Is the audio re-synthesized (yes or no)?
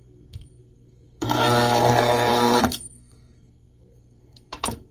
yes